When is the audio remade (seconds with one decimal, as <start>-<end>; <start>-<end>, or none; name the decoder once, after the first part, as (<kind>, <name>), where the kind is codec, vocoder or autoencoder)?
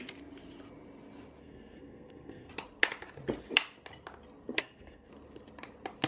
1.4-2.5 (codec, SNAC); 4.6-5.1